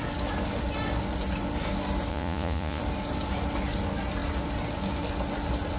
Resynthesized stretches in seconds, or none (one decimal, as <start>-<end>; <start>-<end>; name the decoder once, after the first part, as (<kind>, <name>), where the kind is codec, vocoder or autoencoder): 2.1-2.8 (vocoder, Vocos)